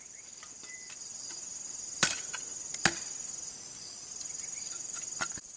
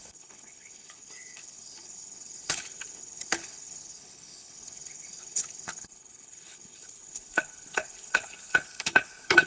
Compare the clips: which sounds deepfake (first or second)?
second